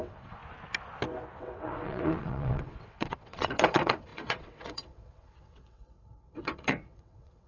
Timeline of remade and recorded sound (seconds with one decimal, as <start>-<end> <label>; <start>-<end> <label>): 0.0-0.4 remade; 0.4-1.4 recorded; 1.4-7.5 remade